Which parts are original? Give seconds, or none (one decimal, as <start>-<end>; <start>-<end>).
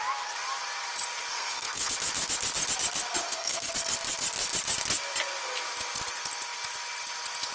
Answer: 0.0-1.3; 1.9-3.2; 3.7-7.5